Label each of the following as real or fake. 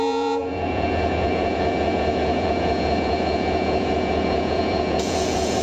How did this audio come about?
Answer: fake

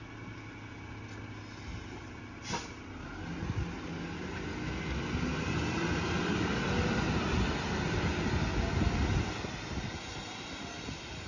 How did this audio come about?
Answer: real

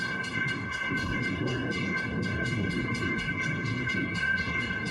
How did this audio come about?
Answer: fake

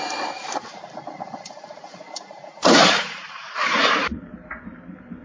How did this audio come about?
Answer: fake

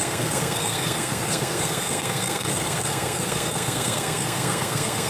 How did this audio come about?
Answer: fake